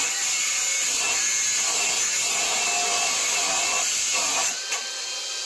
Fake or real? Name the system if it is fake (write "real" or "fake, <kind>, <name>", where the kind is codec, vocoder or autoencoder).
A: real